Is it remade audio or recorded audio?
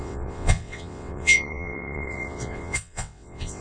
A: remade